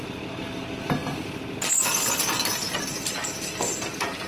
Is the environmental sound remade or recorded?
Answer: recorded